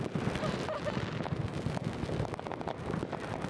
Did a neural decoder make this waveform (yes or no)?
no